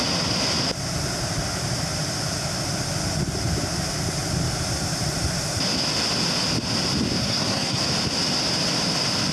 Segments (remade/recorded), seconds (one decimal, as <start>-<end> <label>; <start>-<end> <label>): 0.0-7.2 recorded; 7.2-7.8 remade; 7.8-9.3 recorded